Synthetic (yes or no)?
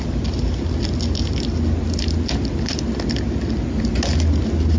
no